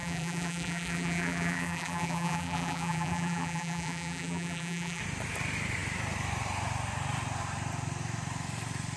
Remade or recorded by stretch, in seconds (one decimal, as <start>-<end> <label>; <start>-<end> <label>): 0.0-5.0 remade; 5.0-9.0 recorded